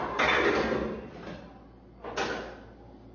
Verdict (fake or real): real